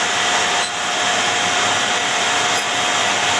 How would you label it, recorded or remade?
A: recorded